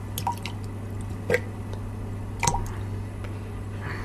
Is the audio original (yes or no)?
yes